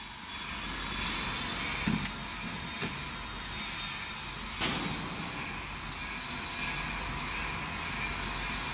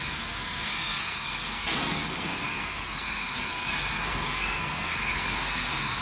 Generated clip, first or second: second